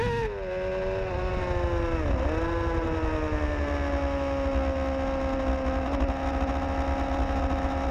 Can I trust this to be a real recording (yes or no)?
yes